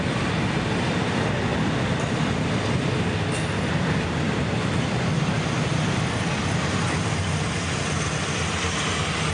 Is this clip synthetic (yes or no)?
no